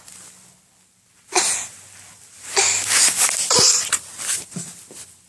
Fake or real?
real